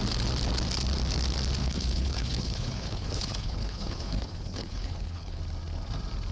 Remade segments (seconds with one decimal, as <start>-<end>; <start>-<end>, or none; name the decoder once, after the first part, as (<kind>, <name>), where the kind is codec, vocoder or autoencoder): 1.6-5.4 (codec, HILCodec)